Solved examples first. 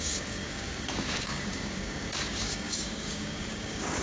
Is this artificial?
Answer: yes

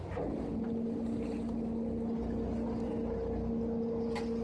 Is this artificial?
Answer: no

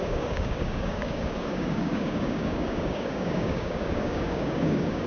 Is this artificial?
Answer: yes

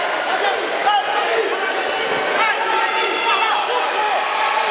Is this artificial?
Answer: no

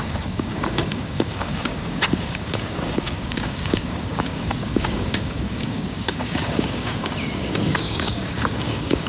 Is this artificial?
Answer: yes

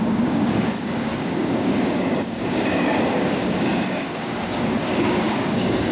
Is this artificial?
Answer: yes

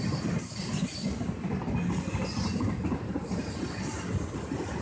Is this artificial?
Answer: no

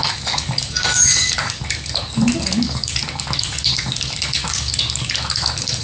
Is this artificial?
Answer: yes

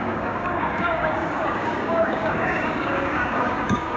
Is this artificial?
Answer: yes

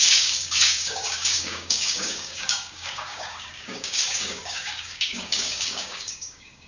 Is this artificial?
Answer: yes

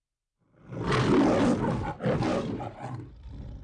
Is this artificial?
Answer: no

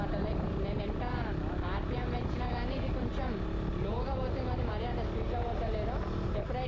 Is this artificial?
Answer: no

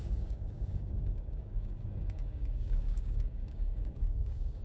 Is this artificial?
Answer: yes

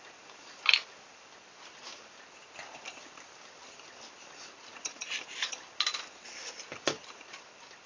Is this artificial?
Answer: no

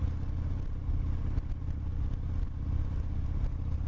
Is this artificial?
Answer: no